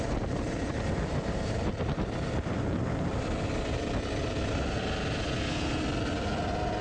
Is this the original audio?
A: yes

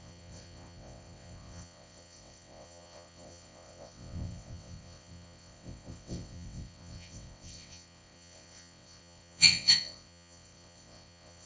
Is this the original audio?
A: no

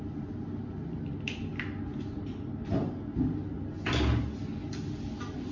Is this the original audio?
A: yes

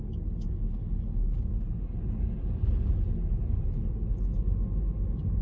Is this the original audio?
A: yes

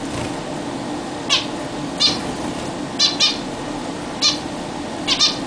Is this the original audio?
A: yes